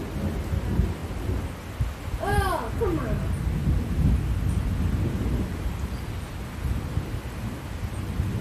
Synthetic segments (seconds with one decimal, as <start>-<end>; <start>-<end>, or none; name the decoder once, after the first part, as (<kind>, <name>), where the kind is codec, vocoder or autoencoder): none

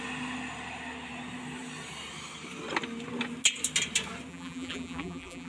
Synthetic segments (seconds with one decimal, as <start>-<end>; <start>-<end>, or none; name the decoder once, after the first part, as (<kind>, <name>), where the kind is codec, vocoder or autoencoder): 4.3-5.5 (vocoder, BigVGAN v2)

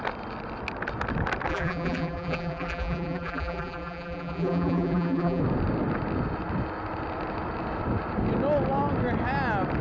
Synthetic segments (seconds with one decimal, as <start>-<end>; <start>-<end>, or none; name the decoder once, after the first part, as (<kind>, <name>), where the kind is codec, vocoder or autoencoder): 1.5-5.4 (vocoder, BigVGAN v2)

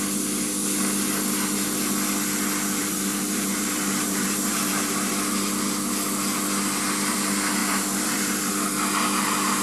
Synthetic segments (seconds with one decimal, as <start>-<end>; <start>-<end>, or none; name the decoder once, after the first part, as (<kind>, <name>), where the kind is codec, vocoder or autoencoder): 2.8-5.1 (vocoder, BigVGAN v2); 7.6-8.5

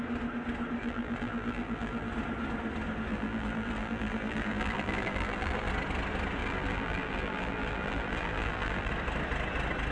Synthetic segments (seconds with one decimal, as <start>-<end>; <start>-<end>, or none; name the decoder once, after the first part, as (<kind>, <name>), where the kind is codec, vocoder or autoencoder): 0.8-2.1 (vocoder, BigVGAN v2); 3.1-5.7; 6.4-8.9

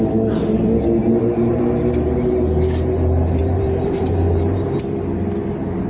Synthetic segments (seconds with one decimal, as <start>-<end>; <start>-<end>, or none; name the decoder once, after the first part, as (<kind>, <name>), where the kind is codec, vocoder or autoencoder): 1.0-1.6 (vocoder, BigVGAN v2); 3.4-4.8

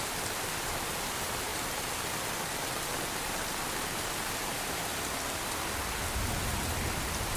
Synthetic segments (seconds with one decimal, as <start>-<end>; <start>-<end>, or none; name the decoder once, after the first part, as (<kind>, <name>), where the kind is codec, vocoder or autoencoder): 0.0-1.5 (vocoder, BigVGAN v2); 4.1-4.9; 6.7-7.4

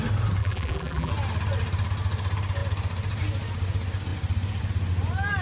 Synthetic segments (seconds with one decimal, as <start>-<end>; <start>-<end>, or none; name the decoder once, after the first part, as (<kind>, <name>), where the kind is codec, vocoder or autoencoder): 0.4-1.1 (vocoder, BigVGAN v2)